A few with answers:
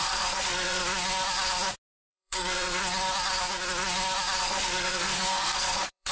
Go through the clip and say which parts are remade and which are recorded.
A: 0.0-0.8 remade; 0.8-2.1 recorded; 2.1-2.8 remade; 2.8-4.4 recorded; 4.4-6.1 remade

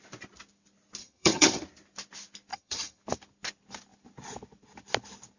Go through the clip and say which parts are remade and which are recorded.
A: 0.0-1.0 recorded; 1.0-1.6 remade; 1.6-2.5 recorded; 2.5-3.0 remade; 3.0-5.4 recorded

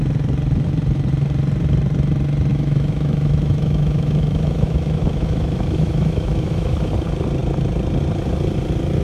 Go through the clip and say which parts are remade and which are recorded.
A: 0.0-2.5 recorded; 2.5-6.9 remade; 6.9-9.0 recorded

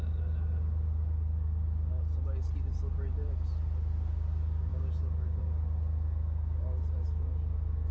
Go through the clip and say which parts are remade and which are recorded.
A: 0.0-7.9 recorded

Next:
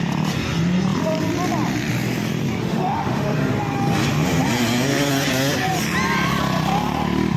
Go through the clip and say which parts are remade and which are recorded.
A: 0.0-2.6 recorded; 2.6-3.5 remade; 3.5-7.4 recorded

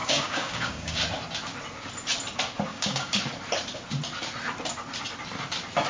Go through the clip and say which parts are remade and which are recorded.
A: 0.0-1.0 remade; 1.0-2.7 recorded; 2.7-3.2 remade; 3.2-5.9 recorded